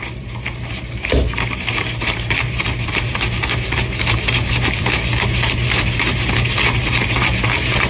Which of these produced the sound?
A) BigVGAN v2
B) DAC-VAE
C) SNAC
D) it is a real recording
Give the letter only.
A